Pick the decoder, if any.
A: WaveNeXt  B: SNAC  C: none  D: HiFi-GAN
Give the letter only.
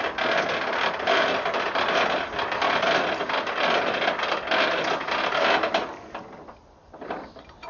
C